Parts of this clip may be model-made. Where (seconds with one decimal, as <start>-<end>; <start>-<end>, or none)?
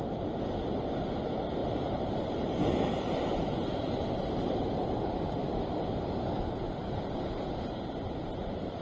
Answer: 1.6-5.7; 6.8-7.5